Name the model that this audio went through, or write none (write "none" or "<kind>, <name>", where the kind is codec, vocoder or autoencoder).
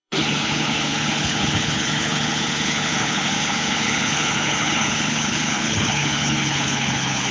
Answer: codec, HILCodec